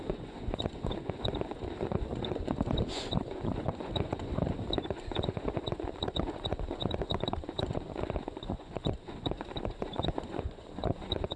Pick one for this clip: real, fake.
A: fake